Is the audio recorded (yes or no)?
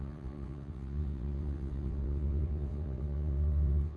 no